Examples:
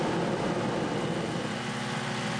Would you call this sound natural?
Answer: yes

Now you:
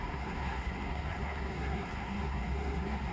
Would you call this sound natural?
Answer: no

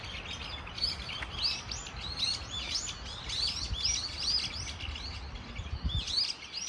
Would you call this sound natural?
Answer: yes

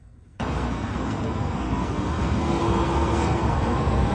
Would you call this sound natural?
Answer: no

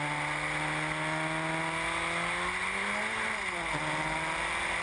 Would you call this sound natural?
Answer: yes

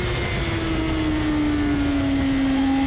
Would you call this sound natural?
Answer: yes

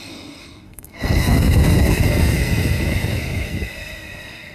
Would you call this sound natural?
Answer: no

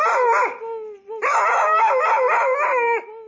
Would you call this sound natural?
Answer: yes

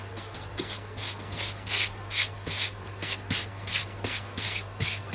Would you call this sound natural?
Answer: no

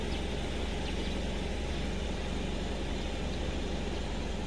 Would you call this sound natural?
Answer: yes